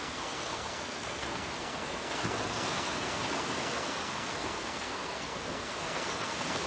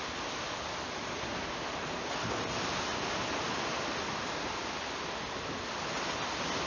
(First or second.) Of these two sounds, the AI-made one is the first